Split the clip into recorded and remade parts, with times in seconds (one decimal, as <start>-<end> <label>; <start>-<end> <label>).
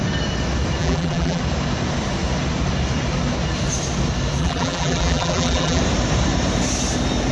0.0-0.8 recorded; 0.8-1.4 remade; 1.4-4.4 recorded; 4.4-5.8 remade; 5.8-7.3 recorded